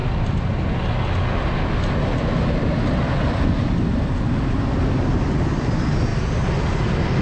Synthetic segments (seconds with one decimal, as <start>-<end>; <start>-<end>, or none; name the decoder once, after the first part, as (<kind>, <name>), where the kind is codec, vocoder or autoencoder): none

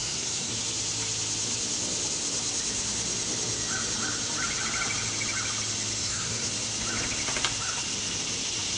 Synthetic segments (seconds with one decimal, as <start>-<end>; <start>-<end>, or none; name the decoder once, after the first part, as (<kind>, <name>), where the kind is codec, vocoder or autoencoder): 0.0-0.5 (codec, SNAC); 6.0-6.5

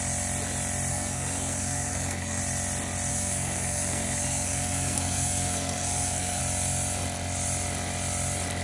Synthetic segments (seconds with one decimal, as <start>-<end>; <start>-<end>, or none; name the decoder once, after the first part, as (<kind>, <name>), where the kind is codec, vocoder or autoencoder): 0.9-2.4 (codec, SNAC); 3.1-6.4

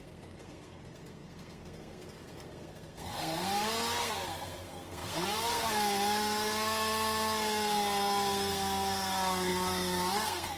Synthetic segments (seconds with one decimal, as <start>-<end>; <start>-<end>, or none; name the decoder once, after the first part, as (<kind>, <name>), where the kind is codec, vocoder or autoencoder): 0.0-10.6 (codec, SNAC)

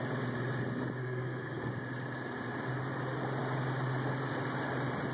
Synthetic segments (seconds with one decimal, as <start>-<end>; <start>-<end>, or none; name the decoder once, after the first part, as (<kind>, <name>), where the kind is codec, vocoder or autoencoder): 1.0-1.7 (codec, SNAC)